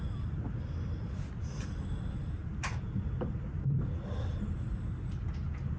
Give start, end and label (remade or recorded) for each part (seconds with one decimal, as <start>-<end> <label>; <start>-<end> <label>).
0.0-5.8 recorded